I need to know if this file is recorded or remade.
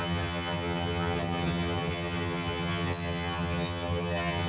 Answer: remade